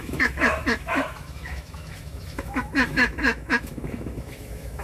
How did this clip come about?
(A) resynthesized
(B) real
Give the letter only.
A